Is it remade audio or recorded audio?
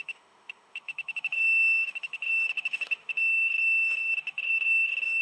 remade